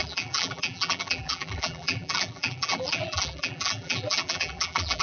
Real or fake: fake